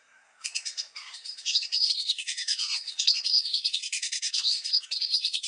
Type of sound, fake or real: fake